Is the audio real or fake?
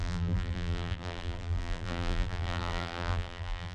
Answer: fake